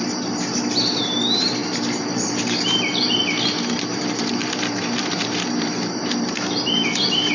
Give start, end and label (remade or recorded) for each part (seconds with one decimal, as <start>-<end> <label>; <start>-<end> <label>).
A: 0.0-0.5 remade; 0.5-1.0 recorded; 1.0-7.3 remade